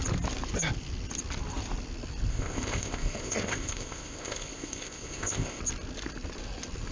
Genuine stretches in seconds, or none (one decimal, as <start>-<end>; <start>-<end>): 0.0-2.3; 5.6-6.9